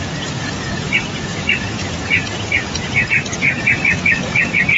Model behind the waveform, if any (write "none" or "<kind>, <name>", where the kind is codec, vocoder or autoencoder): vocoder, Vocos